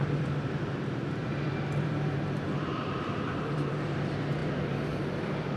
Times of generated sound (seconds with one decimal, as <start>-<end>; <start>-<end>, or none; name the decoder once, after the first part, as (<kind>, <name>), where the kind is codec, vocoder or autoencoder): 0.0-5.6 (vocoder, BigVGAN v2)